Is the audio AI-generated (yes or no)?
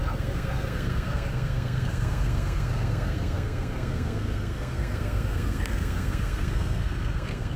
yes